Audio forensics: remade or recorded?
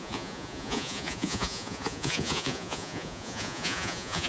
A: remade